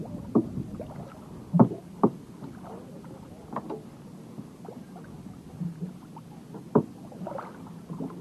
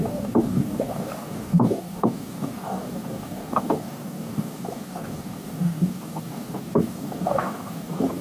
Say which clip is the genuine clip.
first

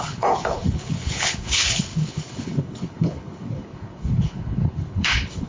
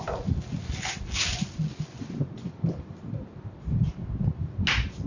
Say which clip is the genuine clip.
second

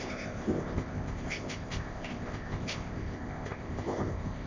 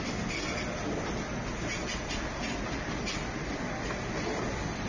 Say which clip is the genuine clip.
second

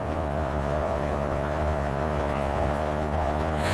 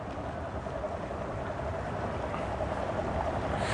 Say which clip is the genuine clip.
second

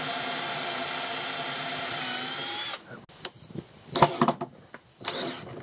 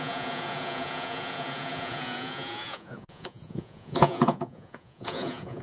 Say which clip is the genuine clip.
first